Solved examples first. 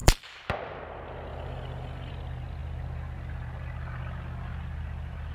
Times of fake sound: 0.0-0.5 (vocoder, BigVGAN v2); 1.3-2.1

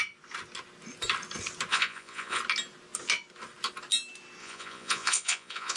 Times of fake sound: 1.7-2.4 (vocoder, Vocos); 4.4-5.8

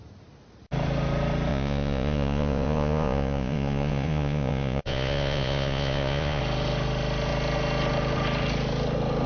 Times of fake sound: 1.5-6.4 (vocoder, Vocos)

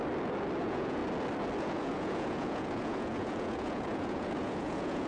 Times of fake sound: 0.6-1.0 (vocoder, Vocos); 1.6-5.1

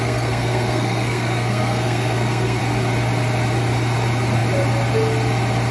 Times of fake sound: 0.0-2.6 (codec, SNAC)

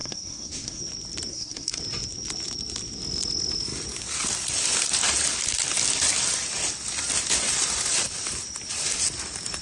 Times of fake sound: 0.0-0.8 (codec, SNAC); 1.3-1.8

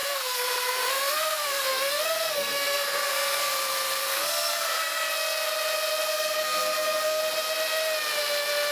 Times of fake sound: 0.0-3.5 (codec, SNAC); 4.0-5.1; 6.1-7.2

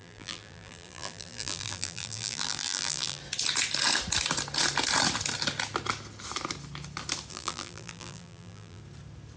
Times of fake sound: 0.0-3.2 (vocoder, BigVGAN v2); 7.3-8.8